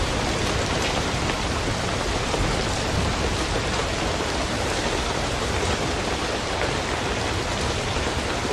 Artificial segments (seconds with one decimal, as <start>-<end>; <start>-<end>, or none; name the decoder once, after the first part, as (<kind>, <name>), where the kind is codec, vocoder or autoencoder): 0.0-8.5 (vocoder, BigVGAN v2)